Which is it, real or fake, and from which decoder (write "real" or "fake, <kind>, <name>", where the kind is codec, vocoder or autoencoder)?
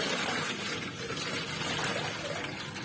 real